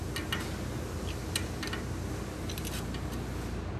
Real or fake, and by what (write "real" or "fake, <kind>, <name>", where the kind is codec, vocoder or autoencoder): real